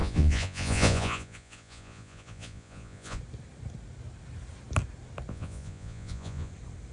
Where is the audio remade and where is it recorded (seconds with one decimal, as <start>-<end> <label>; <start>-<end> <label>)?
0.0-3.2 remade; 3.2-5.3 recorded; 5.3-6.5 remade; 6.5-6.9 recorded